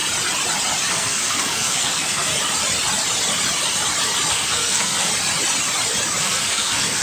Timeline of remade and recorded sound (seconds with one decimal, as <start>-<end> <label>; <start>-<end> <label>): 0.0-0.9 recorded; 0.9-2.3 remade; 2.3-4.3 recorded; 4.3-5.1 remade; 5.1-6.2 recorded; 6.2-7.0 remade